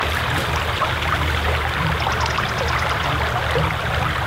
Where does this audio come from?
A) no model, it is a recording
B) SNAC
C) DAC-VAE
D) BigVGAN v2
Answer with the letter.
A